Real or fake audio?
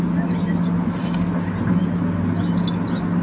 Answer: real